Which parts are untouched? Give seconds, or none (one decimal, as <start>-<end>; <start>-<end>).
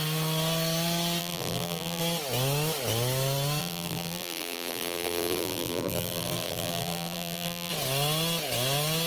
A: 0.0-1.2; 2.0-3.6; 7.7-9.1